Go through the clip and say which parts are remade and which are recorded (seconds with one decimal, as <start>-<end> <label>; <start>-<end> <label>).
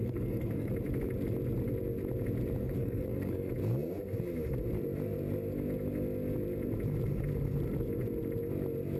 0.0-0.7 remade; 0.7-2.6 recorded; 2.6-3.5 remade; 3.5-9.0 recorded